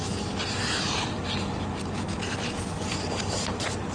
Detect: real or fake real